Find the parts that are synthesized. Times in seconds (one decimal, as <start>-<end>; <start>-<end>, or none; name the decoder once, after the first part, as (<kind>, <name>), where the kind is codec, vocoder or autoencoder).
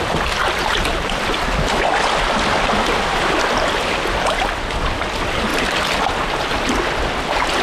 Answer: none